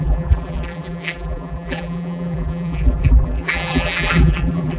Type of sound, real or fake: fake